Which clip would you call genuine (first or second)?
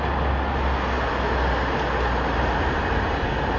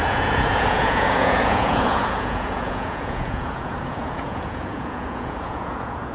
first